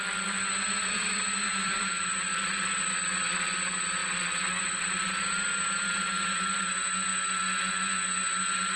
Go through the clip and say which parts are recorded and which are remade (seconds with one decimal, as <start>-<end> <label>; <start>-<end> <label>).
0.0-1.4 recorded; 1.4-2.1 remade; 2.1-8.8 recorded